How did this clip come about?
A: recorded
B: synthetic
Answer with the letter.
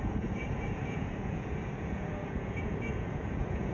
B